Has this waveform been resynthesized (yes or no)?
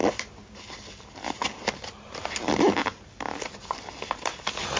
no